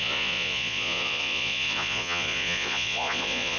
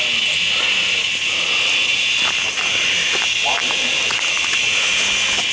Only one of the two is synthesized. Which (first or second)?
first